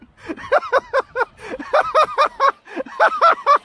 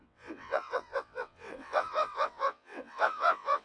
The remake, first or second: second